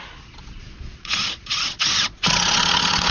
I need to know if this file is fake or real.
fake